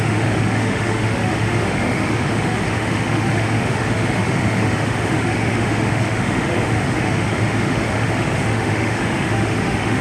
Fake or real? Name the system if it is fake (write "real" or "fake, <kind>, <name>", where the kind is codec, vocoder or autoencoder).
fake, autoencoder, DAC-VAE